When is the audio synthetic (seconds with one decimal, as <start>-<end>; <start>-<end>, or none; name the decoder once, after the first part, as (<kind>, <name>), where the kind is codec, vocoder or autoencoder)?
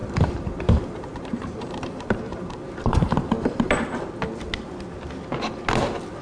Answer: 0.0-3.7 (vocoder, BigVGAN v2)